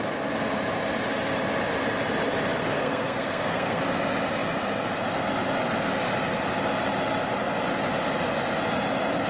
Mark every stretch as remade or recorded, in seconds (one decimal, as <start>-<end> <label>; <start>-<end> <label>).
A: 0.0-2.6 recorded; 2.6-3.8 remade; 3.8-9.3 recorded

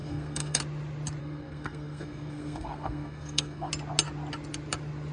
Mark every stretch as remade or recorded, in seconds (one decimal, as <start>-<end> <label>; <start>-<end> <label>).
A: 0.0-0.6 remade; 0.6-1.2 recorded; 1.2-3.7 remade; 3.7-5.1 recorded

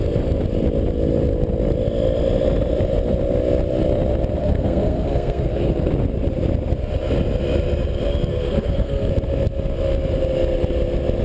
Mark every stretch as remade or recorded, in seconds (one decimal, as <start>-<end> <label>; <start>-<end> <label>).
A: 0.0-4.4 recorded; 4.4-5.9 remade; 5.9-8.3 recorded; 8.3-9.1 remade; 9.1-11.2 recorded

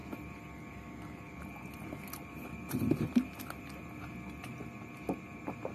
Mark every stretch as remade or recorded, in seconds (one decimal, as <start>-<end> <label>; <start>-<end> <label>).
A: 0.0-5.7 recorded

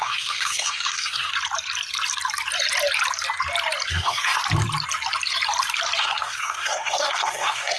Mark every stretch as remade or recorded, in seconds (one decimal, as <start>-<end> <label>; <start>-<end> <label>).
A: 0.0-1.3 remade; 1.3-3.9 recorded; 3.9-4.4 remade; 4.4-6.0 recorded; 6.0-7.8 remade

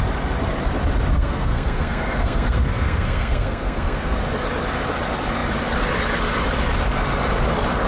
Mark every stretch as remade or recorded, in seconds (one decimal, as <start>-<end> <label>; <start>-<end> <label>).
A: 0.0-1.1 recorded; 1.1-4.2 remade; 4.2-7.9 recorded